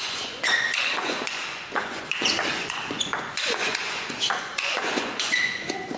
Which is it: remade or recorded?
remade